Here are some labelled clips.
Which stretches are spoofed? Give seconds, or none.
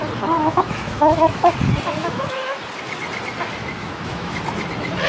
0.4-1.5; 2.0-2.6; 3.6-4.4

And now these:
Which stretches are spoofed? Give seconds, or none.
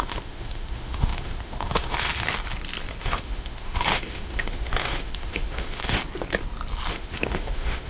0.0-2.1; 3.0-6.0; 6.9-7.9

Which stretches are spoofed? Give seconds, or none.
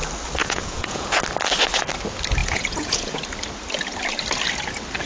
0.4-1.1; 2.4-3.2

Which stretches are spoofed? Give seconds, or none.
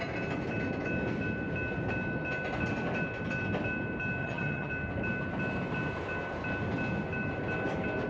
4.2-4.7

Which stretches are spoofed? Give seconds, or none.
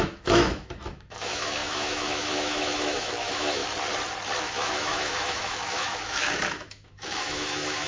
0.0-3.6; 4.4-7.9